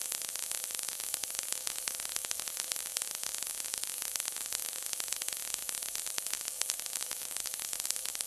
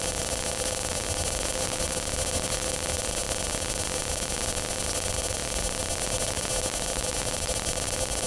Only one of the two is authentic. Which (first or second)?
second